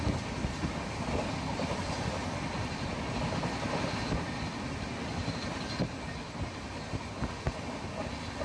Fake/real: real